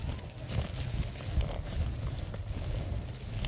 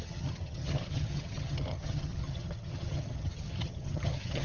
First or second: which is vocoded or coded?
second